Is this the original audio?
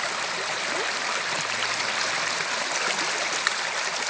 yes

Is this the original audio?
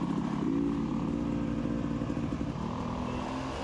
yes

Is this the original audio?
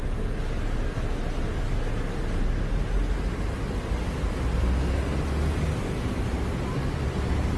yes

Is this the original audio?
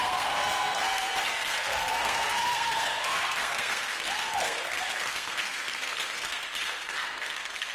no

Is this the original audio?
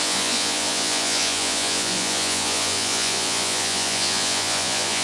no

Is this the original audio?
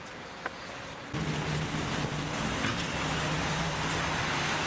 yes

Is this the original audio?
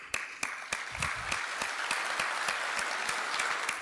yes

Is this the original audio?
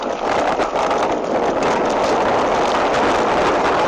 yes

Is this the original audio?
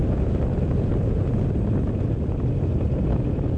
yes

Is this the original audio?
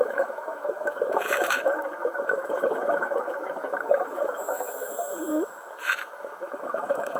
no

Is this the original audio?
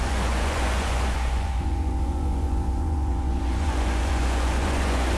no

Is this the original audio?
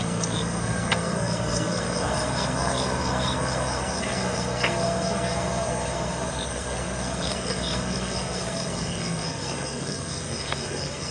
no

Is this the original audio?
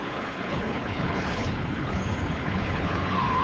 no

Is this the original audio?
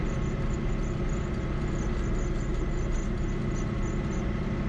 yes